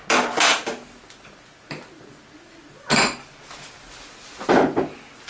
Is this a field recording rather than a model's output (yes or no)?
yes